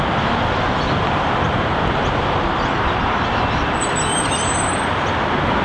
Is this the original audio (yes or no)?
yes